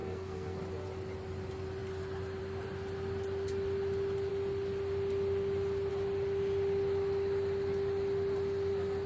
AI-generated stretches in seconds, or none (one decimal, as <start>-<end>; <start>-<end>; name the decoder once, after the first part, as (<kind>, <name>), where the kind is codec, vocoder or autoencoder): 0.0-0.6 (codec, SNAC)